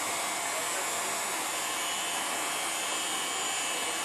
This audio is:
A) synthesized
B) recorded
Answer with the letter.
B